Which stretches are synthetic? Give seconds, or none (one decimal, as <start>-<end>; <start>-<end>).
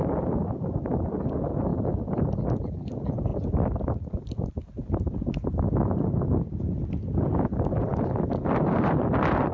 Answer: 1.7-2.3; 7.9-8.5